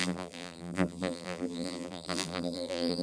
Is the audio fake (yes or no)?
yes